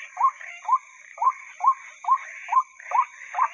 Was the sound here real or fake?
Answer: fake